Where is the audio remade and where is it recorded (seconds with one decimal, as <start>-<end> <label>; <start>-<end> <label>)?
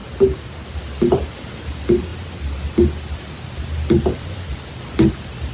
0.0-5.5 recorded